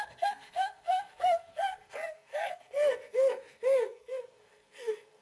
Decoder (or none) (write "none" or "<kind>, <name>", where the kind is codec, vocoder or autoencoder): codec, SNAC